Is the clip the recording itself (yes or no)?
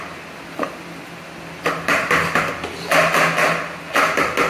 yes